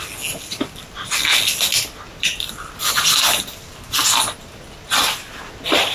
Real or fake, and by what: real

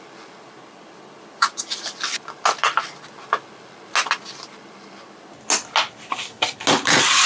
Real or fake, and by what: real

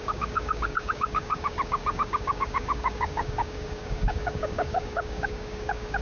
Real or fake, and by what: fake, codec, DAC